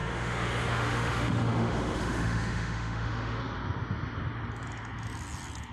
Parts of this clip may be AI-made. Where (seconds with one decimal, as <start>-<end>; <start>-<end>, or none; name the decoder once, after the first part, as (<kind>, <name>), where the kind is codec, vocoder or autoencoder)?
0.0-3.4 (autoencoder, DAC-VAE)